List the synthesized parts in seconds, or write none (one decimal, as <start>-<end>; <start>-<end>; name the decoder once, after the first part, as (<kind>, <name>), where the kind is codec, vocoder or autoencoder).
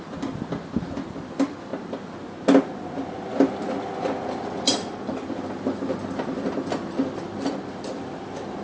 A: 0.0-1.7 (vocoder, BigVGAN v2); 4.6-8.6